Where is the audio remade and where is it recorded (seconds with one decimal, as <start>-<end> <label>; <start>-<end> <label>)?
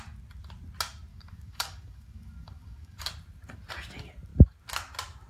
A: 0.0-1.1 recorded; 1.1-3.1 remade; 3.1-5.3 recorded